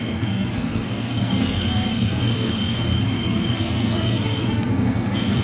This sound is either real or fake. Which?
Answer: fake